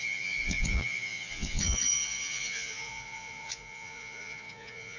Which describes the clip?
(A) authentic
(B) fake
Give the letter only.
B